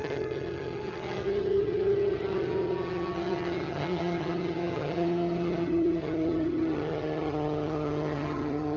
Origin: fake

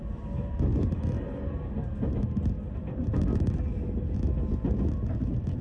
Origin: real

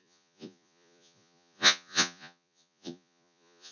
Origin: fake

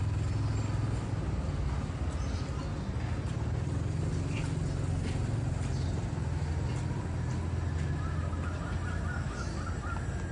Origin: real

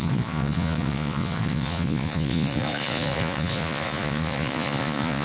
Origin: fake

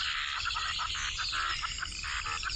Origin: real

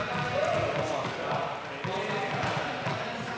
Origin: real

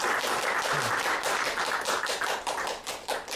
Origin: real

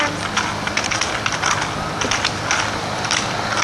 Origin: real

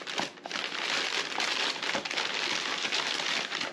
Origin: real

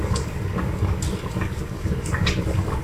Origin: fake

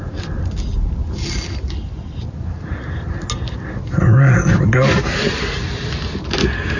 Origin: real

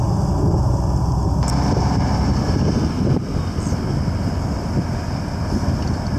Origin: real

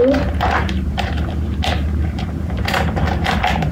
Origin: fake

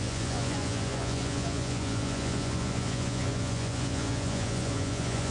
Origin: fake